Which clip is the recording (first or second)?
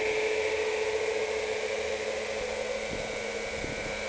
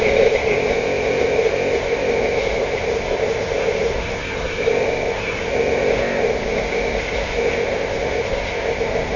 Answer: first